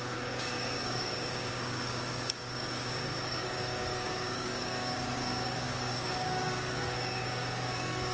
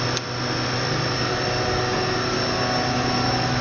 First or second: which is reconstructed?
first